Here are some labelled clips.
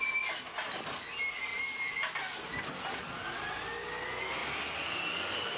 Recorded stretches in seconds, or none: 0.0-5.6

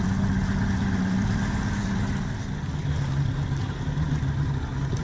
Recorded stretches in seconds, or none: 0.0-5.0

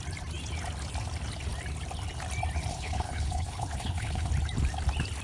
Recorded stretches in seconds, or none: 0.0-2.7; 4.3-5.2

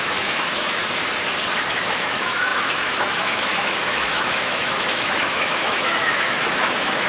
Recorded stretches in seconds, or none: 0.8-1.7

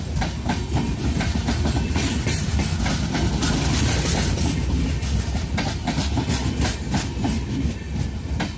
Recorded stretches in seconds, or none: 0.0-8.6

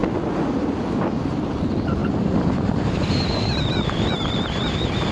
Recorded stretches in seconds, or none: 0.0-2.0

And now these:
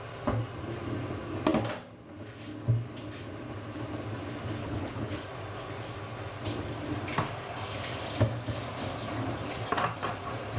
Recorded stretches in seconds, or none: 0.0-4.6; 5.2-10.6

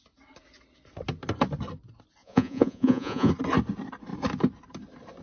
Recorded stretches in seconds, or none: 0.0-2.2; 3.3-5.2